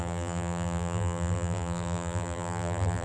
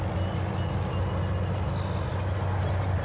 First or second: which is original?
second